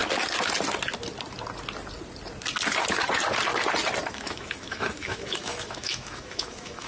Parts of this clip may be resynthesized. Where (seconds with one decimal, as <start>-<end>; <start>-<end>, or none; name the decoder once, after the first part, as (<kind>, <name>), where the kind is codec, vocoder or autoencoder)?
4.1-6.9 (autoencoder, DAC-VAE)